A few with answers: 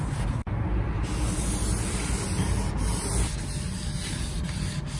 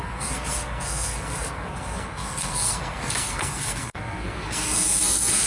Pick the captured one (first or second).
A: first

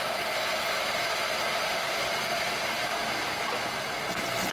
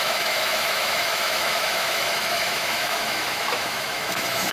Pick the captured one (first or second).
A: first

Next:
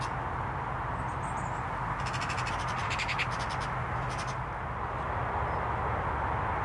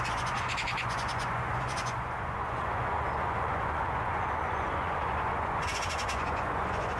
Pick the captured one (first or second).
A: first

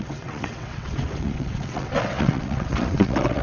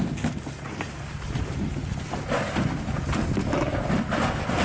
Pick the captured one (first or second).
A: second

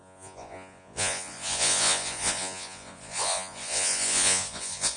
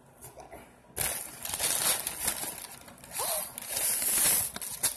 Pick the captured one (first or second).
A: second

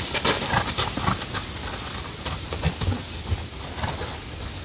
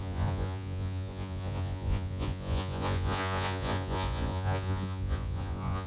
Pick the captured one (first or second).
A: first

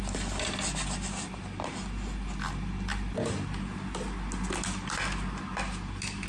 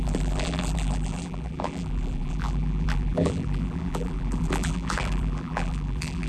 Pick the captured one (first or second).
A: first